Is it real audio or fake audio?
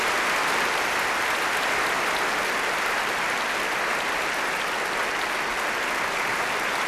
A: real